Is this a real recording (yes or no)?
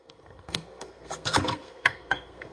no